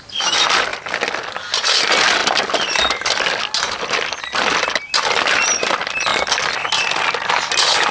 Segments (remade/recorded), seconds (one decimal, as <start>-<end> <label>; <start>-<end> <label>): 0.0-7.9 recorded